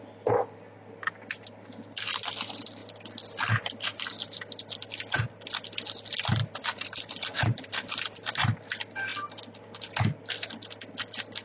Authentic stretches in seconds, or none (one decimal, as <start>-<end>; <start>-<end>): 0.0-6.4; 8.5-11.4